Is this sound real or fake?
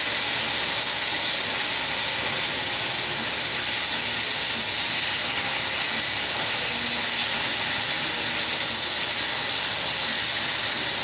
real